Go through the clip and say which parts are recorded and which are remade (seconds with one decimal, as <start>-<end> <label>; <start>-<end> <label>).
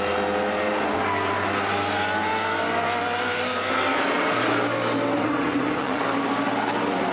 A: 0.0-5.2 recorded; 5.2-6.0 remade; 6.0-7.1 recorded